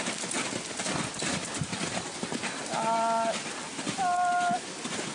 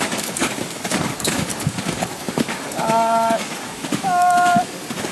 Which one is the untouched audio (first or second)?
first